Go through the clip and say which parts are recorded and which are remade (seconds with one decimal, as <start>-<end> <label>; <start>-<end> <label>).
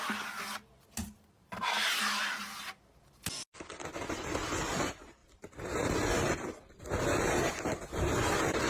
0.0-2.4 recorded; 2.4-3.7 remade; 3.7-5.2 recorded; 5.2-6.8 remade; 6.8-8.7 recorded